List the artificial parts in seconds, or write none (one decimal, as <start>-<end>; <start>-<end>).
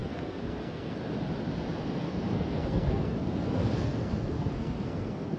0.0-1.0; 2.0-5.4